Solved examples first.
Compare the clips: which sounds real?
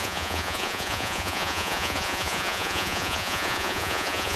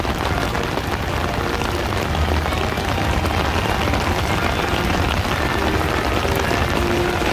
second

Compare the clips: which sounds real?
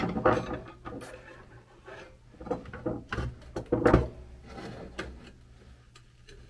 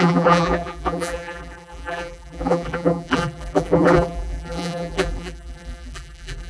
first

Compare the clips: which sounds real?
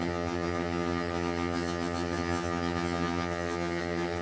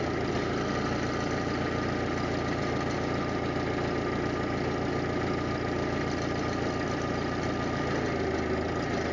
second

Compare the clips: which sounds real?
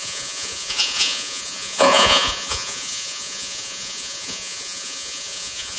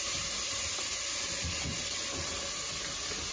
second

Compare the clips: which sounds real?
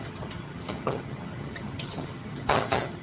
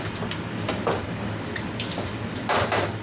second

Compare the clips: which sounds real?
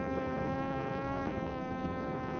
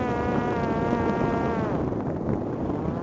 second